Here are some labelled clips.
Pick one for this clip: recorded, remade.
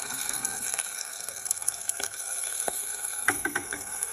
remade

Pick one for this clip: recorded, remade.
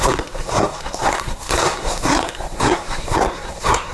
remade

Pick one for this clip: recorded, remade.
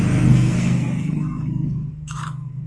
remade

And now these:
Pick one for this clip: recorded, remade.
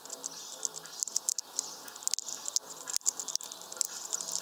recorded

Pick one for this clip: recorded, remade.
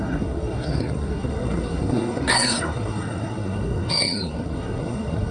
remade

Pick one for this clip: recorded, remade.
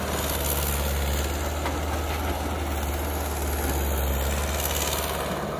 recorded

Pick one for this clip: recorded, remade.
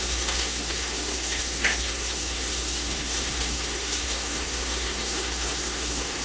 remade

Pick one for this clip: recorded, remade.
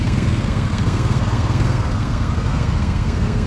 remade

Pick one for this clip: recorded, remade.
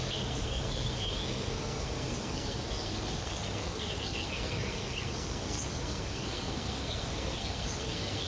remade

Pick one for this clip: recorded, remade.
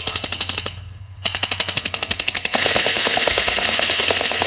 remade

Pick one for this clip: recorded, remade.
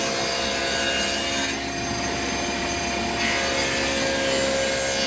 recorded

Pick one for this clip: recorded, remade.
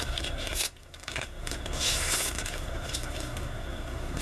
remade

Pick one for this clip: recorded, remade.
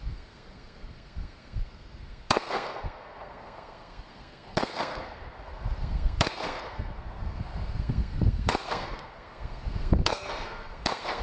remade